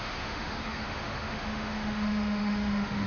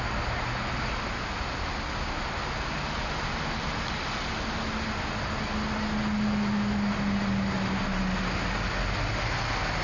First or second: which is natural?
second